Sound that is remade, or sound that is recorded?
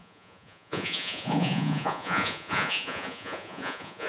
remade